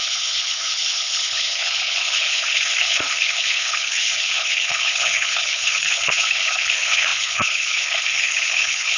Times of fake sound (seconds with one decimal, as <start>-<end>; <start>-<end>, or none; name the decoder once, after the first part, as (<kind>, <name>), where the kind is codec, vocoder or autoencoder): 0.0-9.0 (codec, HILCodec)